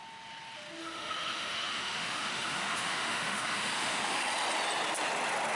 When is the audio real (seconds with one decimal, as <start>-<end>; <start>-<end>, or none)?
0.0-0.8; 4.2-5.6